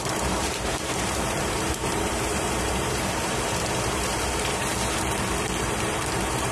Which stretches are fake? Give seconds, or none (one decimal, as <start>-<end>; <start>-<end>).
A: 0.0-4.7; 5.6-6.5